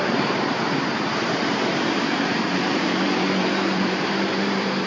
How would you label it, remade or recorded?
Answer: remade